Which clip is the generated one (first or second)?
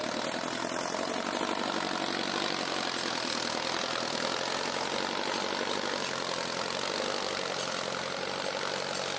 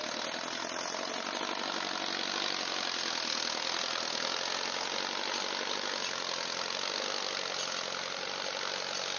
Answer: first